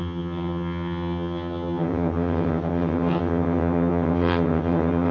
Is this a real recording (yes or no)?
no